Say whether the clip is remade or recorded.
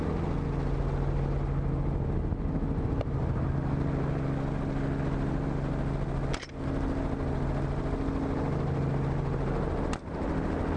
recorded